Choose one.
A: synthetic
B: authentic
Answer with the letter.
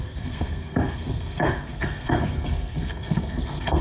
A